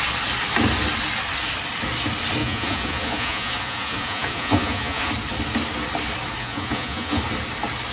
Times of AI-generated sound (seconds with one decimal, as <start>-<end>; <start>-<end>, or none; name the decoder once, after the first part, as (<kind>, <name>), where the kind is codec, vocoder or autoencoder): 2.4-5.1 (vocoder, Vocos); 6.4-7.2